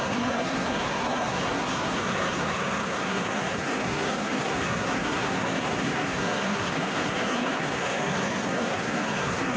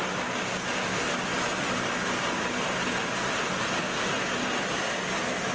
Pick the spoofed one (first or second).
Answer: first